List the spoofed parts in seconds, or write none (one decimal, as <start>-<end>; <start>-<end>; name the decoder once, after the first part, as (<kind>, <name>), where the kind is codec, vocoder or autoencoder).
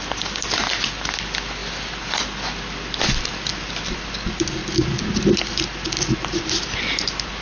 none